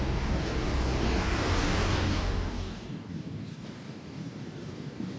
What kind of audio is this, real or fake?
fake